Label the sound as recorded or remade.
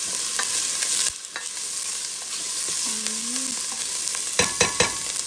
recorded